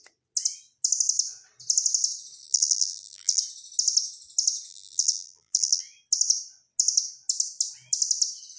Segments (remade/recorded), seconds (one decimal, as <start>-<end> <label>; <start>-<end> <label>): 0.0-2.4 recorded; 2.4-3.4 remade; 3.4-4.7 recorded; 4.7-5.8 remade; 5.8-8.6 recorded